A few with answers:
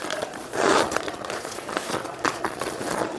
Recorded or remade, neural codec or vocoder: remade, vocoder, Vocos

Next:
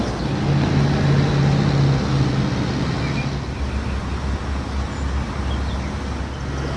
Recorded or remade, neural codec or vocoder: recorded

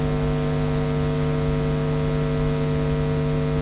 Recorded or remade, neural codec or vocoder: recorded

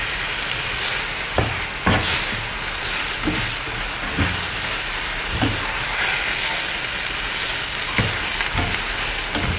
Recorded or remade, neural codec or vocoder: recorded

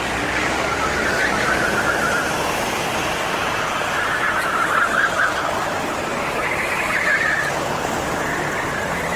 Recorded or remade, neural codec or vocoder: recorded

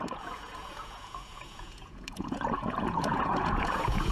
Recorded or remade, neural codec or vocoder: remade, vocoder, Vocos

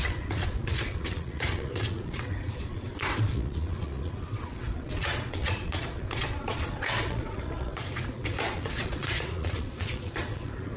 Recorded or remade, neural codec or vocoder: remade, vocoder, Vocos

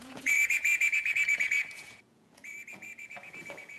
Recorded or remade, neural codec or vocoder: remade, vocoder, Vocos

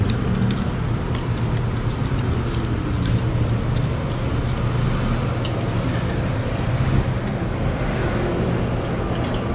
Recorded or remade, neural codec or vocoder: recorded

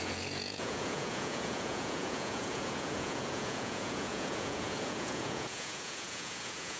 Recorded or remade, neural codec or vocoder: remade, vocoder, Vocos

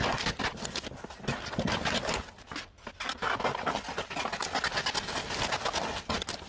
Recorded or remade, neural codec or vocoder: recorded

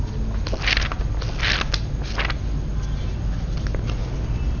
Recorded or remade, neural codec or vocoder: recorded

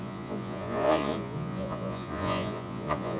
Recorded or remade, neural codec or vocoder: remade, vocoder, Vocos